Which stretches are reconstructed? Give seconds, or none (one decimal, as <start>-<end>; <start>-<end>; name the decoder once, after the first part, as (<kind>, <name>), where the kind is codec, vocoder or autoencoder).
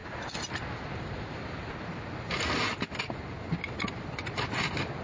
none